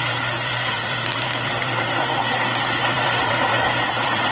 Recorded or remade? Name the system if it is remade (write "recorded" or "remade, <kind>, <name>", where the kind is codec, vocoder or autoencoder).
remade, vocoder, BigVGAN v2